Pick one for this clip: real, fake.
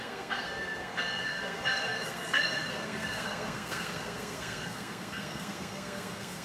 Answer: fake